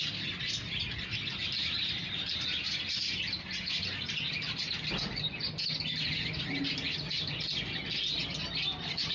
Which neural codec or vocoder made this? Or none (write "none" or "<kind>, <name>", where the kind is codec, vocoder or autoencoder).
none